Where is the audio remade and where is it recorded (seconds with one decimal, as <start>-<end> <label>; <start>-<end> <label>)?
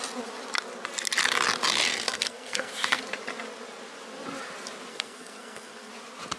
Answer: 0.0-1.9 recorded; 1.9-3.0 remade; 3.0-4.9 recorded; 4.9-5.9 remade; 5.9-6.4 recorded